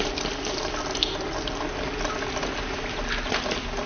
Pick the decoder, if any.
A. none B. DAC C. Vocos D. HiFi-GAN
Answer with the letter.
A